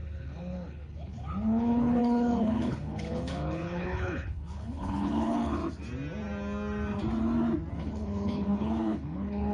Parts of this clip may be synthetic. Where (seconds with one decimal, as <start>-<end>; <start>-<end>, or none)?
0.0-5.6; 7.7-9.5